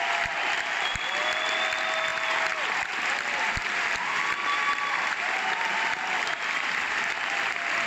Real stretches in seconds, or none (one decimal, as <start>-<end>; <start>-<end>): 0.0-7.9